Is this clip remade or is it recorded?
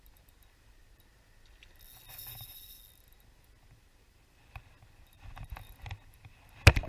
recorded